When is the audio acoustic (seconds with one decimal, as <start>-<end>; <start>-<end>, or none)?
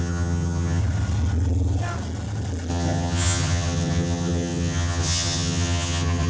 0.8-2.7